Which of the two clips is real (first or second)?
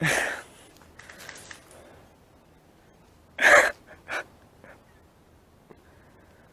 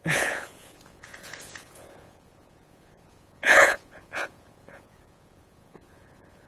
first